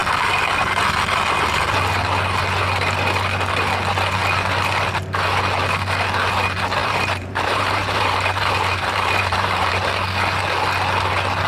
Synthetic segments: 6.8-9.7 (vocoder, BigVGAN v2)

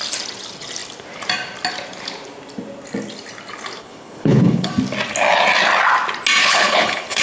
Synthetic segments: 3.8-4.7 (codec, HILCodec); 6.4-7.2